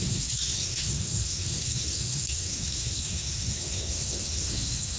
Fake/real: fake